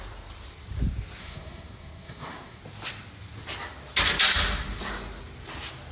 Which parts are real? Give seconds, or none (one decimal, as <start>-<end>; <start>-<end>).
0.0-1.2; 2.6-5.9